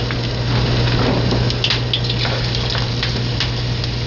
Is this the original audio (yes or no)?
yes